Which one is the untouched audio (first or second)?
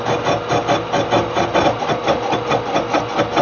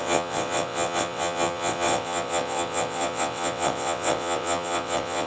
first